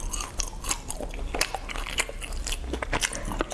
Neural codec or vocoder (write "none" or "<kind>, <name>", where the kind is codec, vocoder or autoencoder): none